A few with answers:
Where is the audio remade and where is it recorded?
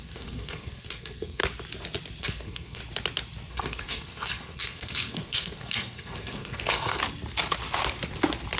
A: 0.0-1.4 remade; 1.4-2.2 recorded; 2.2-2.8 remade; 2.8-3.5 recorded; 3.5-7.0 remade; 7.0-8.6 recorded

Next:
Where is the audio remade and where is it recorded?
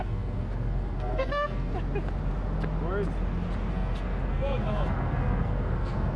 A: 0.0-1.7 remade; 1.7-3.7 recorded; 3.7-6.2 remade